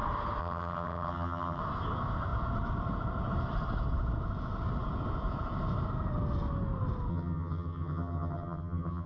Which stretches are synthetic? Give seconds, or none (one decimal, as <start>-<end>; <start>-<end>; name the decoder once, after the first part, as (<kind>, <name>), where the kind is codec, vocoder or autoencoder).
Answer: 0.4-1.6 (vocoder, HiFi-GAN); 7.1-9.1